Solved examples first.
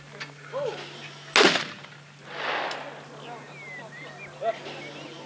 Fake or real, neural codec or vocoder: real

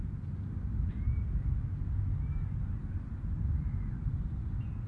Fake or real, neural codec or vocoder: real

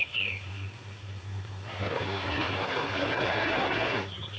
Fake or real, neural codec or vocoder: fake, codec, SNAC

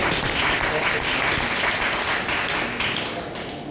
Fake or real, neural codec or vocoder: real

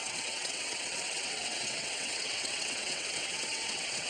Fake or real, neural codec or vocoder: fake, vocoder, WaveNeXt